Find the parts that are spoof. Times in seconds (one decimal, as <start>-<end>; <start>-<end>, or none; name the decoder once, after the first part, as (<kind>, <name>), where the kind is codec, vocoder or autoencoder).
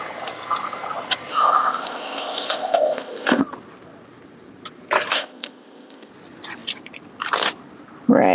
1.3-3.4 (codec, ZipCodec); 5.1-6.1